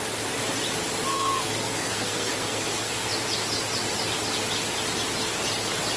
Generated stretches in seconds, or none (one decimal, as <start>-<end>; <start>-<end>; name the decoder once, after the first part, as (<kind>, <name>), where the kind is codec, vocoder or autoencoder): 1.1-3.1 (codec, SNAC)